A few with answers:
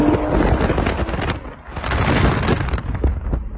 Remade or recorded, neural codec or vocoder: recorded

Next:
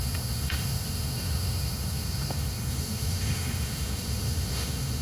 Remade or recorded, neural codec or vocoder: remade, autoencoder, DAC-VAE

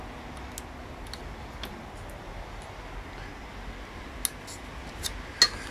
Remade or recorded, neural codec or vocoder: recorded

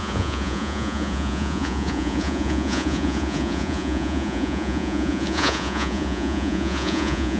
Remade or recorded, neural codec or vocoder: remade, vocoder, Vocos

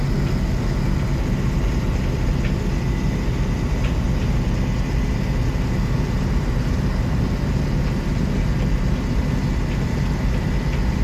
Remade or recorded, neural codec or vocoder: recorded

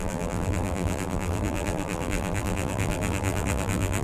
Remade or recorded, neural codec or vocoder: remade, vocoder, BigVGAN v2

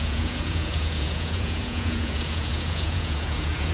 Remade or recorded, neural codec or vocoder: remade, vocoder, Vocos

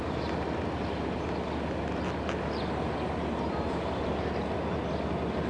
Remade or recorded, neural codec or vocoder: recorded